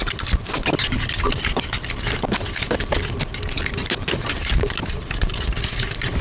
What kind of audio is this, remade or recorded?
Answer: recorded